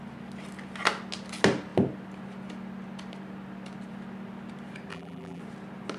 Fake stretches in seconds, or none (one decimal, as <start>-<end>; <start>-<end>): 4.9-5.4